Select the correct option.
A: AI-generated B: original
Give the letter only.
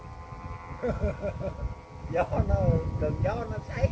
B